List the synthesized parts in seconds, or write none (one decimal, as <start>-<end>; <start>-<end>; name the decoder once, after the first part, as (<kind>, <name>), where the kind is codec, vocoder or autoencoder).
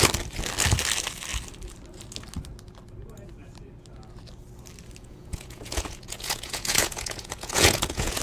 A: 5.0-8.2 (vocoder, Vocos)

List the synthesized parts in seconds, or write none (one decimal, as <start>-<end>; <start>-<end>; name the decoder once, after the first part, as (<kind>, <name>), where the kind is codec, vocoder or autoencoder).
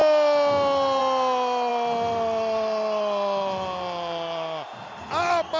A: none